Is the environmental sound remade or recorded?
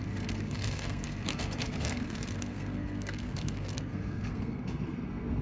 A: remade